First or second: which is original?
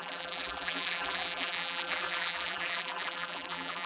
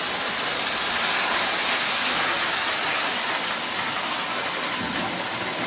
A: second